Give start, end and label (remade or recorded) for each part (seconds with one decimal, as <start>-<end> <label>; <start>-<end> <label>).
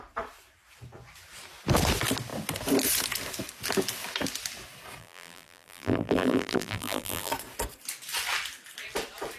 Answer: 0.0-5.0 recorded; 5.0-7.3 remade; 7.3-9.4 recorded